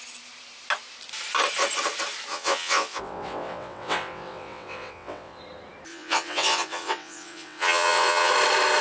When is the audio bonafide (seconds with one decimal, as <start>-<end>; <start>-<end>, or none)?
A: 0.0-2.3; 5.4-5.9; 8.3-8.8